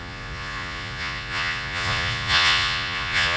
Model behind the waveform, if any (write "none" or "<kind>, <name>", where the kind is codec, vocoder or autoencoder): vocoder, Vocos